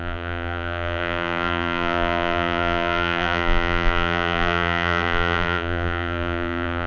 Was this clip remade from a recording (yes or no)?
yes